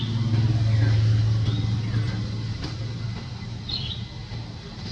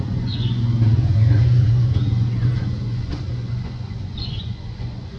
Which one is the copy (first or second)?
second